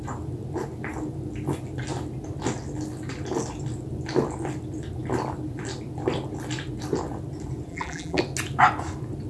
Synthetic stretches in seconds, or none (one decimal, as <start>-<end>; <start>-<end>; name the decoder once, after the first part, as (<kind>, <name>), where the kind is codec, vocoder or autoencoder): 7.7-8.2 (vocoder, BigVGAN v2)